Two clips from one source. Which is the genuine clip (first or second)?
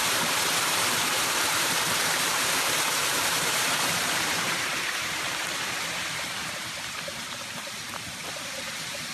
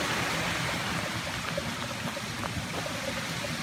second